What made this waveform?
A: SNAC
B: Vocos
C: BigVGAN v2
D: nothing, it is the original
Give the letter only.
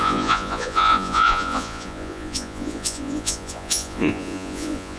B